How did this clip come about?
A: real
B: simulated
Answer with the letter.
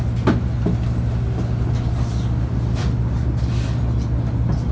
A